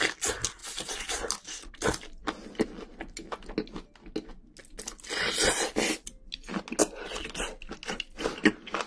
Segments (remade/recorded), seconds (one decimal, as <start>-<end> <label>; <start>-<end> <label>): 0.0-8.9 recorded